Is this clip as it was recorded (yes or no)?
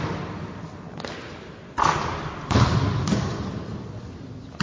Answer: yes